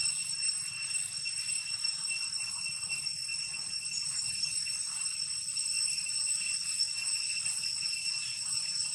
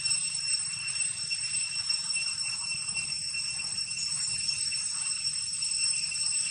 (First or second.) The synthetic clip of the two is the second